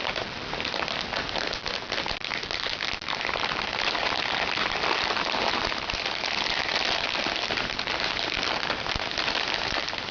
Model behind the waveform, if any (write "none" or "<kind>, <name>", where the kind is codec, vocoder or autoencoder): none